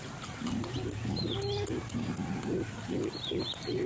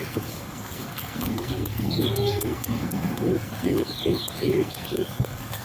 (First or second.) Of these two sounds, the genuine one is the first